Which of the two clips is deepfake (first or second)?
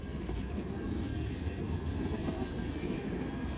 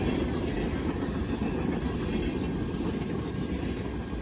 first